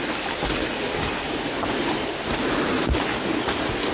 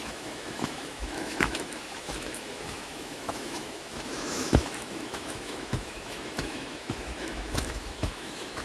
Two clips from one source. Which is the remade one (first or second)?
second